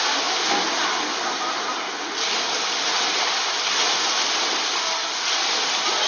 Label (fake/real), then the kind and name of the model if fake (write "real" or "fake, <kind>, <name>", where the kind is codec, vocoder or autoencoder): real